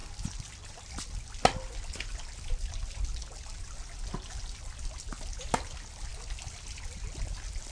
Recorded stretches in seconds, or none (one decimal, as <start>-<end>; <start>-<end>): 0.0-7.7